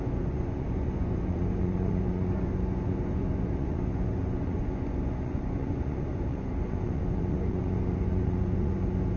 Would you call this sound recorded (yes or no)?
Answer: no